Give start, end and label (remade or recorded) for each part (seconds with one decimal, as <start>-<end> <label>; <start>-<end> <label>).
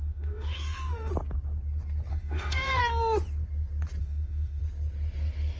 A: 0.0-1.1 remade; 1.1-2.1 recorded; 2.1-2.8 remade; 2.8-4.0 recorded; 4.0-4.6 remade; 4.6-5.6 recorded